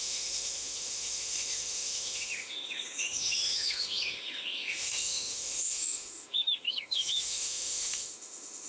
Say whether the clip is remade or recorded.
remade